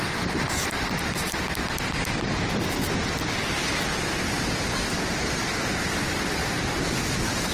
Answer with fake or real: real